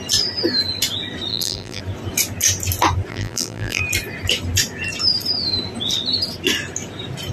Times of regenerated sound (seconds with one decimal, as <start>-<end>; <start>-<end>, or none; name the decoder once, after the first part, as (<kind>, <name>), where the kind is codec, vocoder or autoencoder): 1.3-1.8 (vocoder, BigVGAN v2); 3.1-3.8

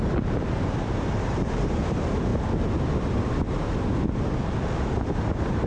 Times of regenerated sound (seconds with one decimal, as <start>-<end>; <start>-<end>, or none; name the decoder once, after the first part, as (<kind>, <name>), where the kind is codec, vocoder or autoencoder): 0.0-2.3 (vocoder, BigVGAN v2); 5.3-5.7

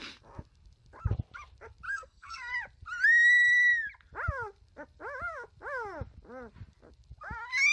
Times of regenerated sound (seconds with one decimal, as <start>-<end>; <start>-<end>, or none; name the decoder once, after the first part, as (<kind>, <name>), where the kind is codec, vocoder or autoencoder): 1.9-2.5 (codec, SNAC)